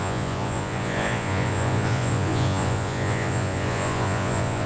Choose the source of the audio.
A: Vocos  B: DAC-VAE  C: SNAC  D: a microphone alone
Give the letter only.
A